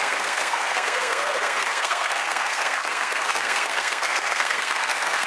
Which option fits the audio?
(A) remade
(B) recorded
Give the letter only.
A